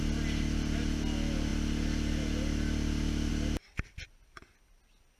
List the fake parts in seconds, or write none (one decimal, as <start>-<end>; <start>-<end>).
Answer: none